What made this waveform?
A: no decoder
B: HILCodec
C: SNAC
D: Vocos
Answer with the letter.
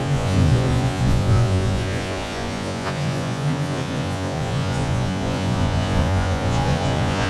D